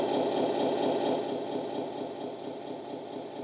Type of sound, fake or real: real